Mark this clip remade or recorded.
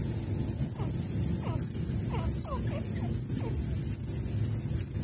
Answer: recorded